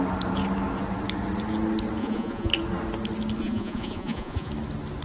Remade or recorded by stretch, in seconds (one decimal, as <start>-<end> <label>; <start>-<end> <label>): 0.0-2.0 recorded; 2.0-2.5 remade; 2.5-3.4 recorded; 3.4-4.5 remade; 4.5-5.0 recorded